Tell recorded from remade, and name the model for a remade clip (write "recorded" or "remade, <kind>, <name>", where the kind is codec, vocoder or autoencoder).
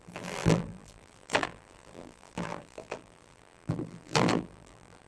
remade, vocoder, BigVGAN v2